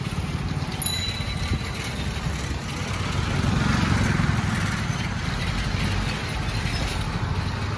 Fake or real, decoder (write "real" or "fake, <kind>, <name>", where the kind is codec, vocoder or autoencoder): real